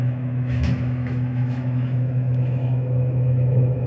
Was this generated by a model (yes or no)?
yes